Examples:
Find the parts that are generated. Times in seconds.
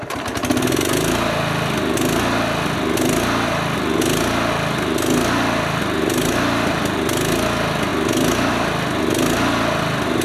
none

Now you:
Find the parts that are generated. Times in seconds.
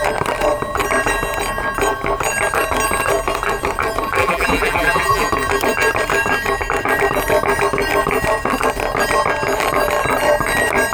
4.2-5.3 (vocoder, BigVGAN v2)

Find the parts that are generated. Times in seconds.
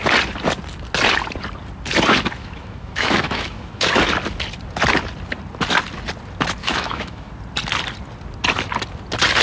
2.4-3.9 (autoencoder, DAC-VAE); 6.6-7.3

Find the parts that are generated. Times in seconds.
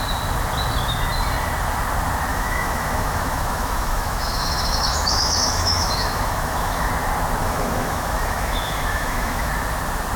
2.3-6.9 (autoencoder, DAC-VAE); 7.4-9.5